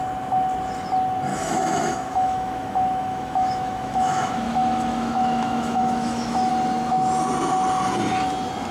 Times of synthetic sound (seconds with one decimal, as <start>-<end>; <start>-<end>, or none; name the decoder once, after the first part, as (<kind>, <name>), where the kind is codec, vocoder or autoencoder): 1.3-6.5 (autoencoder, DAC-VAE)